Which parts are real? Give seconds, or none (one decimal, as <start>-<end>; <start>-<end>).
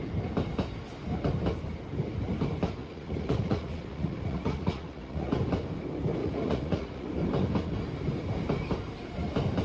0.0-2.8; 5.4-6.2; 7.1-9.6